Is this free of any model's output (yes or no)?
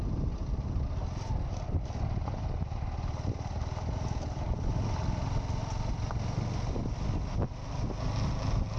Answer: yes